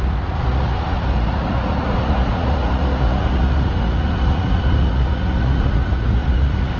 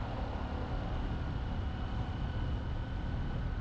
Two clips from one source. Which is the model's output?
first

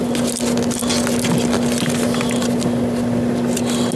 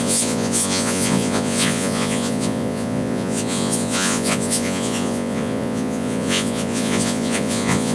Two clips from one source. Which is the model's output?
second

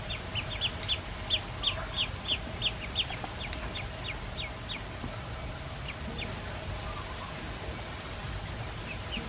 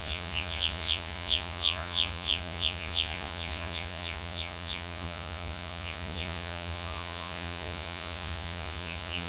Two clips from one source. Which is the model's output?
second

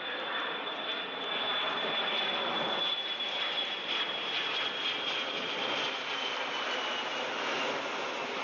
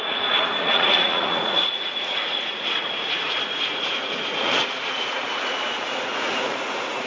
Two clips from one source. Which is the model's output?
second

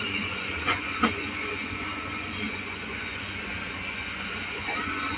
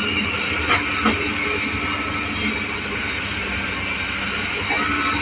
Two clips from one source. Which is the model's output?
first